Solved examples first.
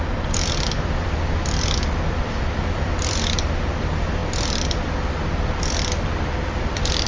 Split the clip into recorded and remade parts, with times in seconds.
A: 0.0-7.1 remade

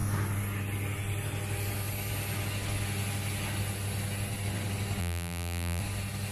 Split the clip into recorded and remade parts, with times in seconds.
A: 0.0-5.0 recorded; 5.0-5.8 remade; 5.8-6.3 recorded

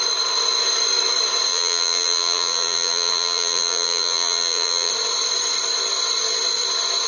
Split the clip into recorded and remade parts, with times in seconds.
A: 0.0-1.5 recorded; 1.5-4.9 remade; 4.9-7.1 recorded

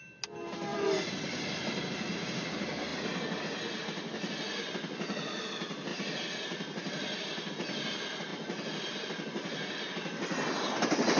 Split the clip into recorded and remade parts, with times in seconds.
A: 0.0-0.7 recorded; 0.7-1.8 remade; 1.8-2.9 recorded; 2.9-3.4 remade; 3.4-5.9 recorded; 5.9-7.5 remade; 7.5-11.2 recorded